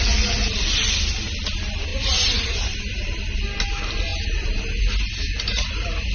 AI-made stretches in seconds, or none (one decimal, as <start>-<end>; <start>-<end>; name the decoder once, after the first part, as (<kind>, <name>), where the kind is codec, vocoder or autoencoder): 1.9-3.2 (vocoder, BigVGAN v2); 4.1-4.8

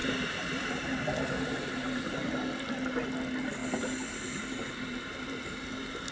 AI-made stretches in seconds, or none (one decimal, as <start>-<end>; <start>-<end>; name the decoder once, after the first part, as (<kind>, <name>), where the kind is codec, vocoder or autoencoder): 0.0-2.0 (vocoder, BigVGAN v2); 3.6-6.1

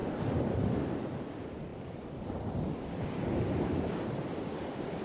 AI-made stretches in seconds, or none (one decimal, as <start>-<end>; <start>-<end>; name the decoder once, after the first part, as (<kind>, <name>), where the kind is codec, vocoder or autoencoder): 0.0-1.2 (vocoder, BigVGAN v2); 1.7-5.0

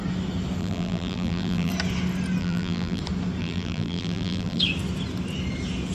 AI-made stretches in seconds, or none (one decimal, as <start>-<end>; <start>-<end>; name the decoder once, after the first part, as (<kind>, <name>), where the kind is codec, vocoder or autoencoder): 0.6-1.7 (vocoder, BigVGAN v2); 2.4-3.0; 3.4-4.6

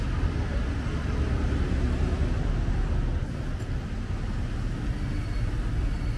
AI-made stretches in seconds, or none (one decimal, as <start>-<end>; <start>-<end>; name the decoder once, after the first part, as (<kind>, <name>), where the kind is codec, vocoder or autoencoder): none